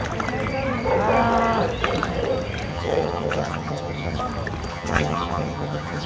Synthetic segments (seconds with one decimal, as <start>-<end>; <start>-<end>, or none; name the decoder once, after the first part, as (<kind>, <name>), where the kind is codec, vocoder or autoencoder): 2.7-4.2 (vocoder, HiFi-GAN); 4.7-6.1